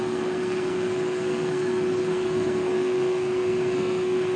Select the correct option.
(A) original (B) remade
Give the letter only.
B